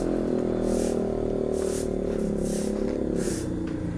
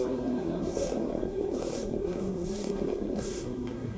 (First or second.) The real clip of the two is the first